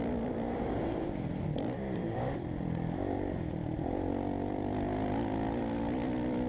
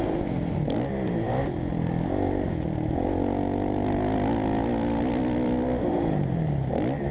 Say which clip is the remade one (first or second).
first